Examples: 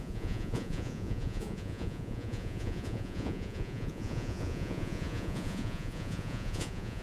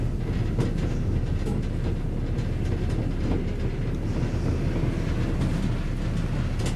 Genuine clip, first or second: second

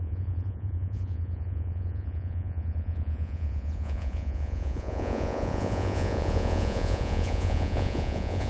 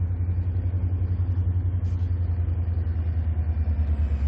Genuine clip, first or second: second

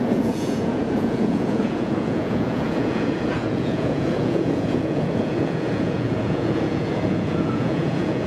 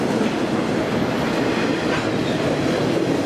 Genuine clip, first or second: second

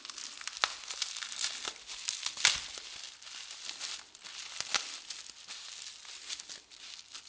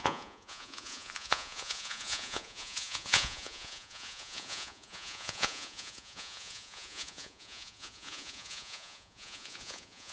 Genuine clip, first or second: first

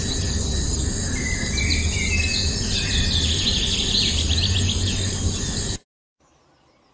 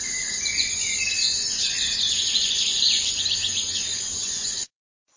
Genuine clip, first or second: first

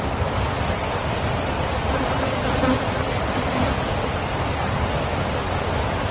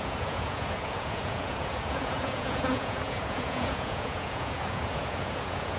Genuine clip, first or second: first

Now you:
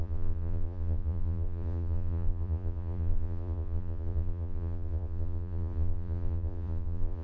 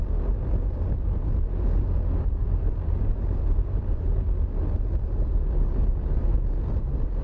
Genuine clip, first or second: second